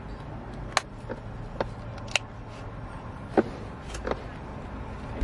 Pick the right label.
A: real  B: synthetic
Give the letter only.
A